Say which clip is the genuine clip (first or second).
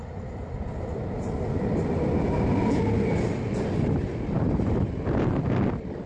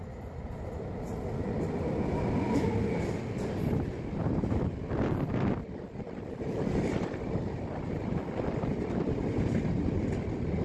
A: first